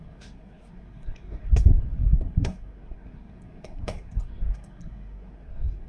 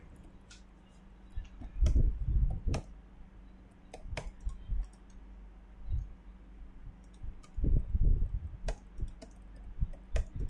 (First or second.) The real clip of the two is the second